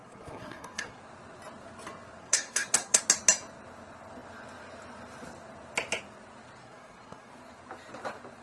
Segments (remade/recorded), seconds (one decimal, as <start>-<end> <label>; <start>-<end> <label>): 0.0-1.0 remade; 1.0-2.2 recorded; 2.2-3.0 remade; 3.0-6.6 recorded; 6.6-7.3 remade; 7.3-8.4 recorded